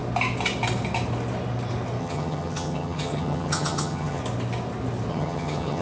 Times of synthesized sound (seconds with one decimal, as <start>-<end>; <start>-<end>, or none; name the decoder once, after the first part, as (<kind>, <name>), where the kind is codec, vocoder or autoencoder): 2.0-4.2 (vocoder, HiFi-GAN); 5.1-5.8